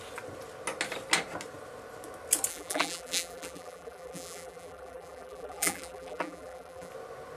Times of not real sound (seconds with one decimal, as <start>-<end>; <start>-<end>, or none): 2.5-6.9